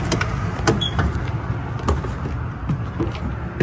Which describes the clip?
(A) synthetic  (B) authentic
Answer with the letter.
B